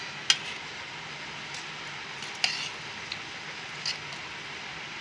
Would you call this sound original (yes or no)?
yes